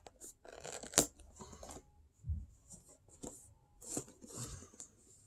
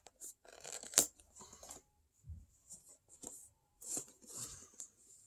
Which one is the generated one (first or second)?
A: second